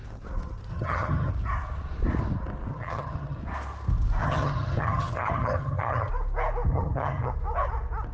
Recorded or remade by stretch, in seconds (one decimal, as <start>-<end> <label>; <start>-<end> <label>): 0.0-0.7 recorded; 0.7-1.3 remade; 1.3-2.7 recorded; 2.7-3.4 remade; 3.4-4.2 recorded; 4.2-6.1 remade; 6.1-6.7 recorded; 6.7-7.3 remade; 7.3-8.1 recorded